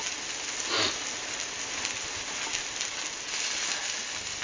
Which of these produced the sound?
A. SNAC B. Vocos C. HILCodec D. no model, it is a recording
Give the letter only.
D